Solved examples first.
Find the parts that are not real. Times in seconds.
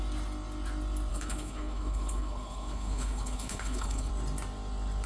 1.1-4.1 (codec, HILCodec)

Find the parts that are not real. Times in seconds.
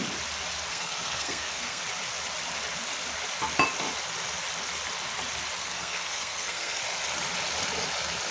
0.7-1.8 (codec, SNAC); 5.6-6.8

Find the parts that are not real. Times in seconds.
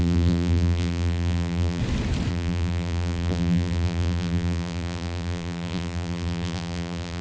0.0-1.8 (vocoder, BigVGAN v2); 2.3-7.2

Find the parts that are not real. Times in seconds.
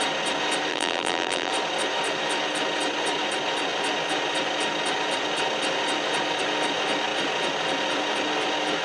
0.7-1.5 (vocoder, BigVGAN v2)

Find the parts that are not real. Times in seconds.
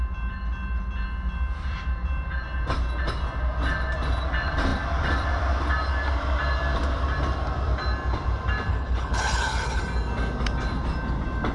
8.7-9.8 (codec, HILCodec)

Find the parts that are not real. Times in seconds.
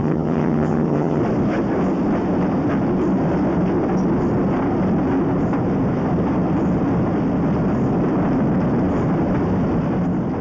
0.0-1.2 (vocoder, HiFi-GAN)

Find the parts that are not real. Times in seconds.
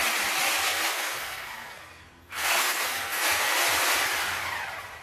0.5-3.5 (codec, SNAC)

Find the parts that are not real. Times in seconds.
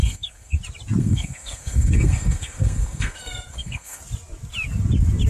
0.0-0.6 (codec, SNAC); 1.0-4.0